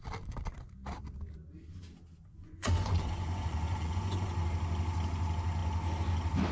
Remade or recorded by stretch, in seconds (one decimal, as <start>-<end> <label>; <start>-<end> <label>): 0.0-2.4 recorded; 2.4-4.3 remade; 4.3-6.5 recorded